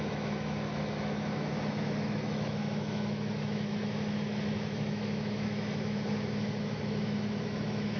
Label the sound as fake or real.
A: fake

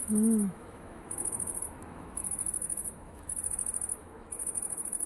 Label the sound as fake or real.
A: fake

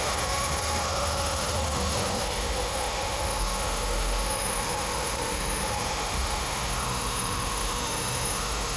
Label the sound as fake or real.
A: fake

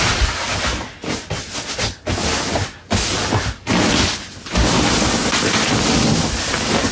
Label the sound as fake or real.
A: real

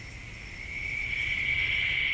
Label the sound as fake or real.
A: real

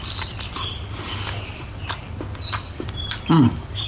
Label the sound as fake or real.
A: real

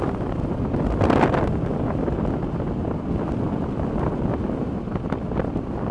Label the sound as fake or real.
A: real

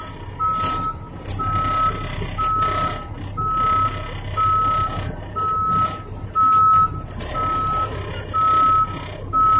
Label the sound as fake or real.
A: real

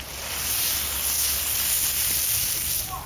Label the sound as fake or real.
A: real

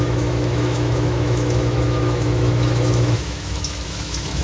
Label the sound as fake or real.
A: fake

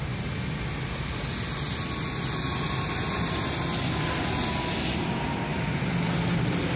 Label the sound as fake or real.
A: real